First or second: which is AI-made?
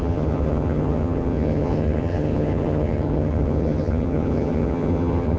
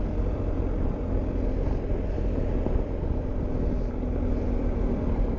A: first